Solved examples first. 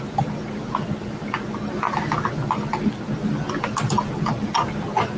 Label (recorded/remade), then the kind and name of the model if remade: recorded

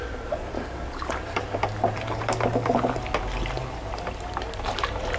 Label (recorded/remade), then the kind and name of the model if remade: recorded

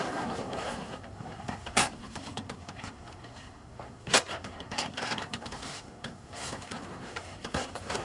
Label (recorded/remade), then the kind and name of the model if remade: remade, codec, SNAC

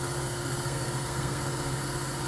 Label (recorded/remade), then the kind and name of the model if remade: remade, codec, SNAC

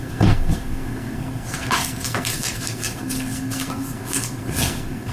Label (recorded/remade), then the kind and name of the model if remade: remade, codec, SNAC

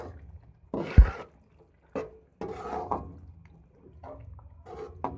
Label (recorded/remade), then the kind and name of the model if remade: recorded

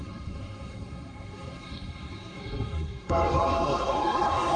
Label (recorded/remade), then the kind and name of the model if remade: remade, codec, SNAC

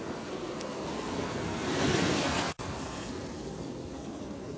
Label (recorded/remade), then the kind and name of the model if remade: remade, codec, SNAC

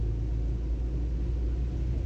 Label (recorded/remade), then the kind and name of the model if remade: recorded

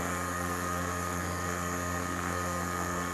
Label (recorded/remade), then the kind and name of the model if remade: remade, codec, SNAC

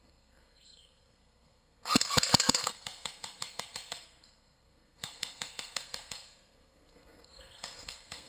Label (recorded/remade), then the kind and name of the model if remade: remade, codec, SNAC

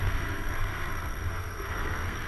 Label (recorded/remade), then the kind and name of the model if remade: remade, codec, SNAC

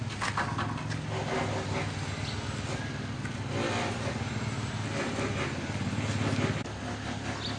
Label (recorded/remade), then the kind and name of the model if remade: recorded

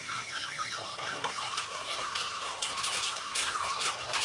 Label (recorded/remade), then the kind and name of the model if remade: remade, codec, SNAC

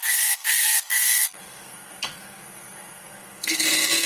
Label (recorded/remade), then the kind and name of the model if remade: remade, codec, SNAC